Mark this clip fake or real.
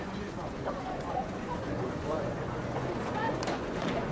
fake